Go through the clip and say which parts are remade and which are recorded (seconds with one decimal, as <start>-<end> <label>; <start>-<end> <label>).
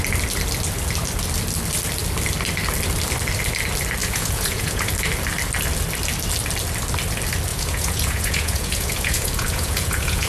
0.0-4.0 recorded; 4.0-4.9 remade; 4.9-7.5 recorded; 7.5-10.3 remade